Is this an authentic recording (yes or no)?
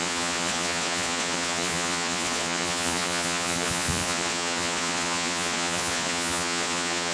no